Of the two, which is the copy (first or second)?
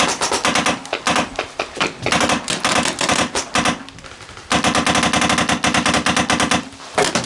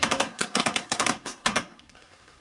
second